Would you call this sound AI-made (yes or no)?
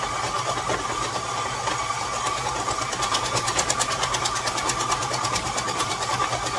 no